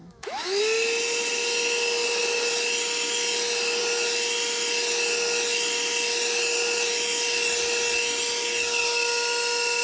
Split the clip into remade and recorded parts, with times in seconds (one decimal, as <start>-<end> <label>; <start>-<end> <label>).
0.0-0.6 remade; 0.6-9.8 recorded